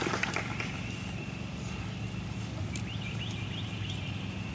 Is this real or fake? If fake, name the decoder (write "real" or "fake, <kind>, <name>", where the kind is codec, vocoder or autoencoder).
real